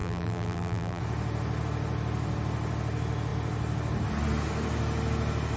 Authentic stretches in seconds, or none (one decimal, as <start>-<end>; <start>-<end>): 1.0-5.6